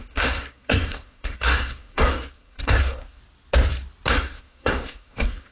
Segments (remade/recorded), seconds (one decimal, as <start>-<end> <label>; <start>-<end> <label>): 0.0-3.2 remade; 3.2-4.1 recorded; 4.1-5.5 remade